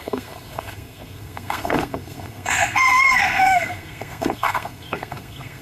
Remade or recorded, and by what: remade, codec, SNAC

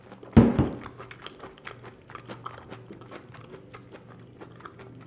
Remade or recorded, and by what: recorded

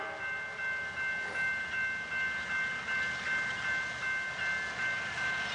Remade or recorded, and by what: recorded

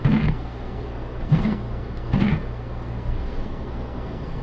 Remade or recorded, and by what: remade, codec, SNAC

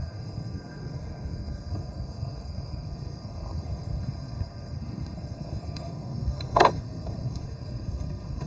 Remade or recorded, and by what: remade, codec, SNAC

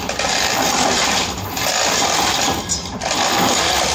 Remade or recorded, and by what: recorded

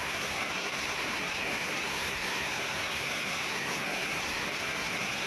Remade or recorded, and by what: remade, codec, SNAC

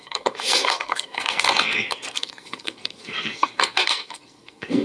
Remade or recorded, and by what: remade, codec, SNAC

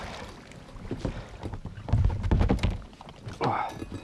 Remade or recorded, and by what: recorded